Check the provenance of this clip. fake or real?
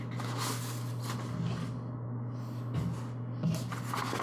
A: real